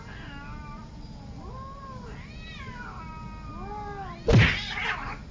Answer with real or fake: real